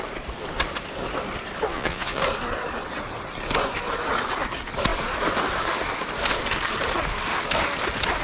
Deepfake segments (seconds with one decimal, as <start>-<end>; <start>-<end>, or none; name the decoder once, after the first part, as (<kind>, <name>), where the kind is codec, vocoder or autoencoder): 1.7-2.2 (vocoder, Vocos)